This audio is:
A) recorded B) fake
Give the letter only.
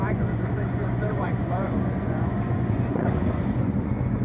B